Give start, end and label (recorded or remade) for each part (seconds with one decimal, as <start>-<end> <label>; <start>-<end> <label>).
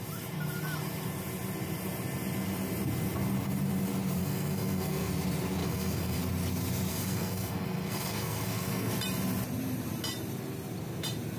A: 0.0-4.2 recorded; 4.2-5.1 remade; 5.1-5.6 recorded; 5.6-6.2 remade; 6.2-6.9 recorded; 6.9-8.9 remade; 8.9-11.4 recorded